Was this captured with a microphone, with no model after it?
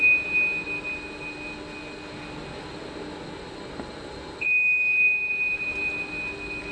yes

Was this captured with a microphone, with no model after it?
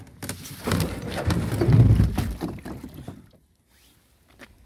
yes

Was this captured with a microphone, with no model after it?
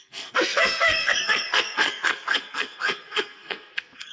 no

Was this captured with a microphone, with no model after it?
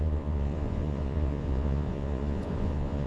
no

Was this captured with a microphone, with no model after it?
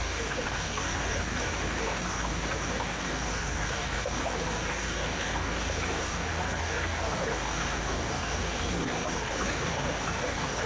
no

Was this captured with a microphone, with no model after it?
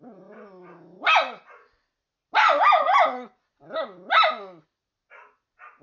yes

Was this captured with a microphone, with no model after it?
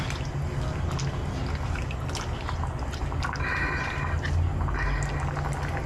yes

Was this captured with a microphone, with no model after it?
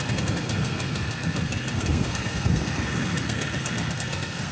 no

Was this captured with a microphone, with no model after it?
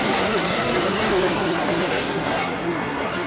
no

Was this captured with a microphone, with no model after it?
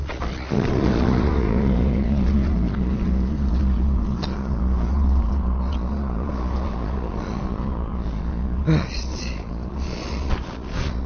no